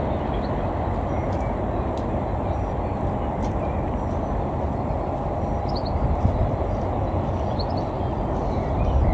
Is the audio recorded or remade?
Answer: recorded